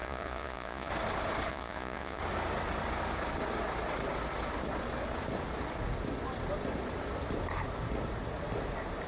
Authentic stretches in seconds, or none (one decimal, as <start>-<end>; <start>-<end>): 0.9-1.5; 2.2-9.1

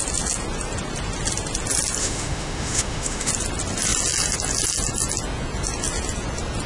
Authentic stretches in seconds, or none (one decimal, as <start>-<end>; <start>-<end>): 0.0-2.0; 3.3-6.7

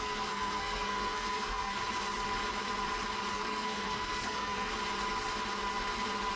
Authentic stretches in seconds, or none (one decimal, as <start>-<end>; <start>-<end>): 1.8-3.3; 4.7-6.4

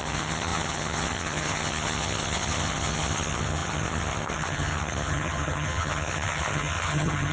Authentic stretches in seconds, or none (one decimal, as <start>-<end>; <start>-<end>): none

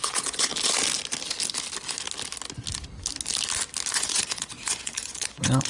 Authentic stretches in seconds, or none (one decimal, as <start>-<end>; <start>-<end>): 0.5-3.9

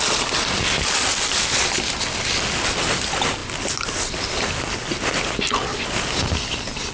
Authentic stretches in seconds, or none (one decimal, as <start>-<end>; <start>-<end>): 0.0-6.9

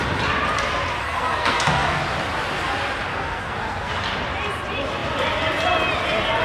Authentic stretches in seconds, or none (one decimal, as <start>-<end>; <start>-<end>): 0.0-1.0; 2.0-3.1; 3.9-6.4

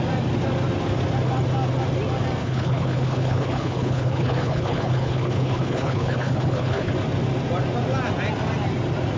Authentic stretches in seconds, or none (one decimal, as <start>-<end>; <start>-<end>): 0.0-2.4; 6.9-9.2